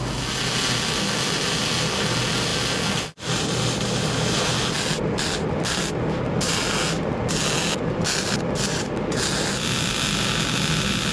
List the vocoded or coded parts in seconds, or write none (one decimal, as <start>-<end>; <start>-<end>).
none